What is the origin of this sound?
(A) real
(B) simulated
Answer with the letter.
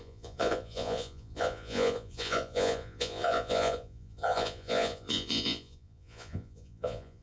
B